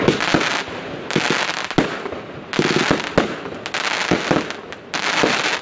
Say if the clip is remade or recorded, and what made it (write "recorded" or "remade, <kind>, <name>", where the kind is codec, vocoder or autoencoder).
recorded